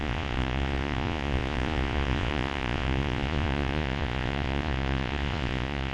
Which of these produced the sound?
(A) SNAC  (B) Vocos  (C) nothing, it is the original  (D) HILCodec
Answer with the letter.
B